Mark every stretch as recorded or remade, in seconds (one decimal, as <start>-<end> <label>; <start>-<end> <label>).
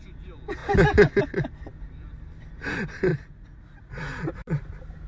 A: 0.0-3.1 recorded; 3.1-3.9 remade; 3.9-5.1 recorded